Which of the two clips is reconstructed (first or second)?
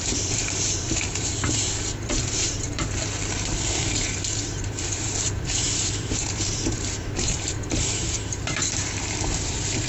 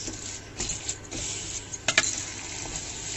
first